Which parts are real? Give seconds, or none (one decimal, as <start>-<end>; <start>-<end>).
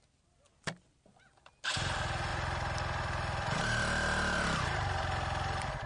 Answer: 0.0-2.3